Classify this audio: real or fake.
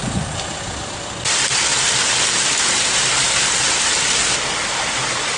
real